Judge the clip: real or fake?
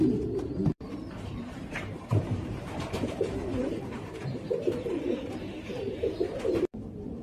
fake